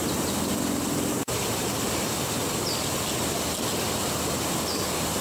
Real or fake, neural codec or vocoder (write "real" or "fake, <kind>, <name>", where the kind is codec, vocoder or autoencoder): real